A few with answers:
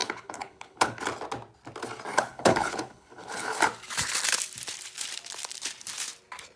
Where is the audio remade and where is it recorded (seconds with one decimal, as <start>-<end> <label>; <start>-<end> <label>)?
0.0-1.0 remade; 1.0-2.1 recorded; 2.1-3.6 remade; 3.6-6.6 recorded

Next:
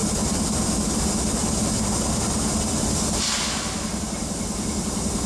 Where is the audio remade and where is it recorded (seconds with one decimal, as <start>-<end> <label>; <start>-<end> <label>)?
0.0-5.3 recorded

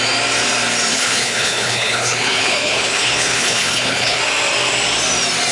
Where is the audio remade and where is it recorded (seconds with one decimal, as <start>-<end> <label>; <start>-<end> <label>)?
0.0-0.9 recorded; 0.9-4.2 remade; 4.2-5.5 recorded

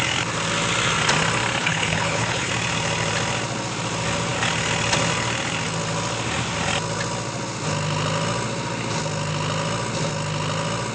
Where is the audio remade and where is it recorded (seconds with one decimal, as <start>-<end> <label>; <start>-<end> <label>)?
0.0-1.6 recorded; 1.6-2.5 remade; 2.5-10.9 recorded

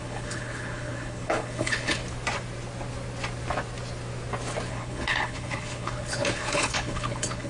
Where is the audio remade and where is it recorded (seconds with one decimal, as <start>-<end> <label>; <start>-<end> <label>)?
0.0-2.0 remade; 2.0-4.7 recorded; 4.7-7.5 remade

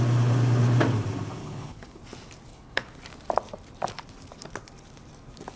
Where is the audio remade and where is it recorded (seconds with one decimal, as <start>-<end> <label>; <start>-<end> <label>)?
0.0-1.4 recorded; 1.4-2.0 remade; 2.0-2.5 recorded; 2.5-3.0 remade; 3.0-5.6 recorded